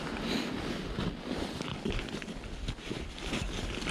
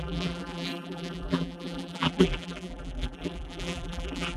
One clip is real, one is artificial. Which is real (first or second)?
first